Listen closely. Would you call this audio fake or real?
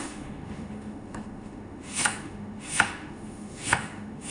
fake